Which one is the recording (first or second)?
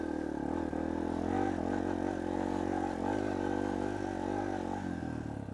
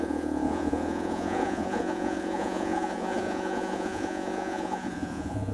first